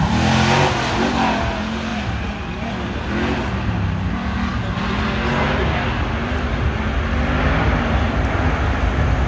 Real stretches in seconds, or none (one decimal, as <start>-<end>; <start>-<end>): 0.0-9.3